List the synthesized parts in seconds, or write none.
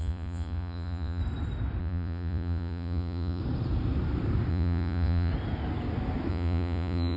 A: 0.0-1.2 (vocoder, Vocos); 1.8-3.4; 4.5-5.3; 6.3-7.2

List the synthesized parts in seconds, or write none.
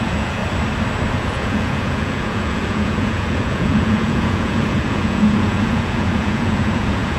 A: 0.0-0.4 (vocoder, Vocos); 1.1-7.2